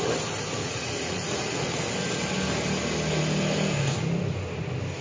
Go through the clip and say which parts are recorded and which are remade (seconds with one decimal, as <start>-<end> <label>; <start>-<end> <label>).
0.0-0.6 recorded; 0.6-1.8 remade; 1.8-5.0 recorded